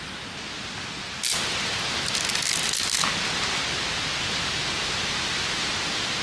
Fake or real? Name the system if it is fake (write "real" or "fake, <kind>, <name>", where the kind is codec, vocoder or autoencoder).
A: real